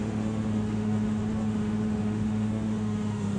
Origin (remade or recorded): remade